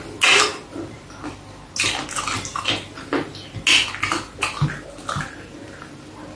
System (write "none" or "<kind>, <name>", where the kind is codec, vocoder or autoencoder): none